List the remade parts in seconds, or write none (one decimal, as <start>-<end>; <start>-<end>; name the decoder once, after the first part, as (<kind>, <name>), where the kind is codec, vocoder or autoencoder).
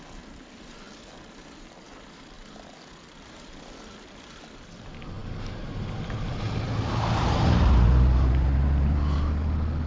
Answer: none